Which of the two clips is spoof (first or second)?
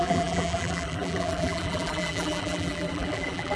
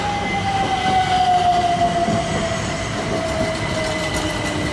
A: first